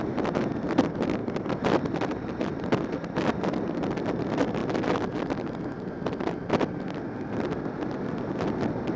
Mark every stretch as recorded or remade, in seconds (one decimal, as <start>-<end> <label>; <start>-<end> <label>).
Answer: 0.0-4.6 remade; 4.6-9.0 recorded